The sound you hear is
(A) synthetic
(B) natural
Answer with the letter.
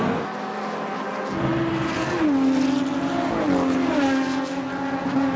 B